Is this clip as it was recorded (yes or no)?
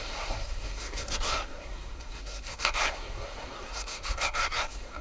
no